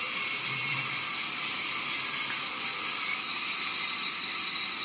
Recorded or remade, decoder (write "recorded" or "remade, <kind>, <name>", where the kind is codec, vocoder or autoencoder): recorded